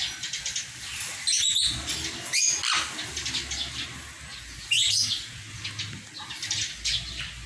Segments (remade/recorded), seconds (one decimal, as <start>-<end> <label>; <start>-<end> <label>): 0.0-7.5 recorded